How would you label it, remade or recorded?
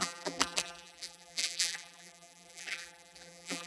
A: remade